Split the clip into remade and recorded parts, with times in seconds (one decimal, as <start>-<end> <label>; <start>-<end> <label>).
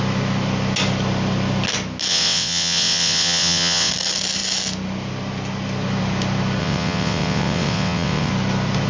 0.0-2.1 recorded; 2.1-3.9 remade; 3.9-6.6 recorded; 6.6-8.3 remade; 8.3-8.9 recorded